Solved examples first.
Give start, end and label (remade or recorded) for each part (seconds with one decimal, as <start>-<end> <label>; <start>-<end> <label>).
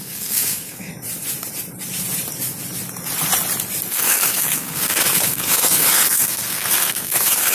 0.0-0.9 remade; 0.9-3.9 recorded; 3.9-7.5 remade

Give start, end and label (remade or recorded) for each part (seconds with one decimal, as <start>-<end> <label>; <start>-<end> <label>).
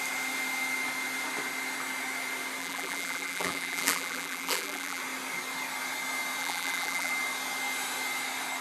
0.0-2.6 recorded; 2.6-5.0 remade; 5.0-6.4 recorded; 6.4-7.1 remade; 7.1-8.6 recorded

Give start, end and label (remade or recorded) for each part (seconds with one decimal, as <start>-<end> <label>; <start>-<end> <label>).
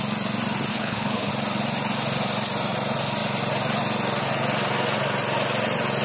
0.0-0.7 recorded; 0.7-1.3 remade; 1.3-6.0 recorded